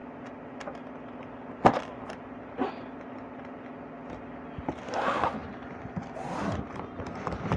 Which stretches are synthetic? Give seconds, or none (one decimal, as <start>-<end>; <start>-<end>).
none